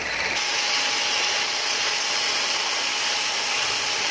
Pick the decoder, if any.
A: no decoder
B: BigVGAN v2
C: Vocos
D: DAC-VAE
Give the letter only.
A